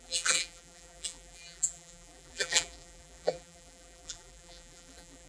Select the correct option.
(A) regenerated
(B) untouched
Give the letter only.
A